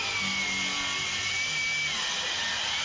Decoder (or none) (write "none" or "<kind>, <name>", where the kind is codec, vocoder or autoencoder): none